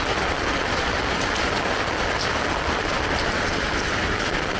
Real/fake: real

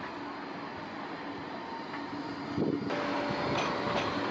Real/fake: real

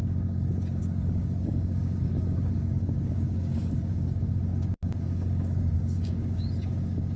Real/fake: fake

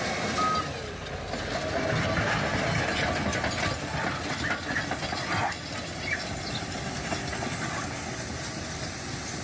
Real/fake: real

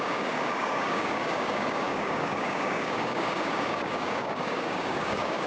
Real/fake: fake